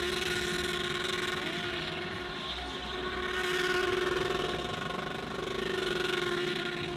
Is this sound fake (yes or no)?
no